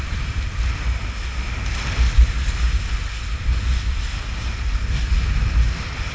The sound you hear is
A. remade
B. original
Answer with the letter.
B